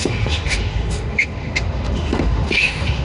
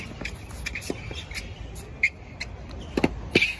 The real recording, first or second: second